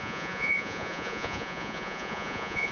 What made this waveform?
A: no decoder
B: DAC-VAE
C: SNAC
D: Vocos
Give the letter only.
D